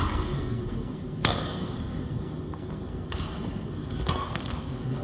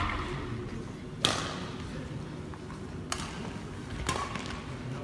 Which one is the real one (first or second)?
second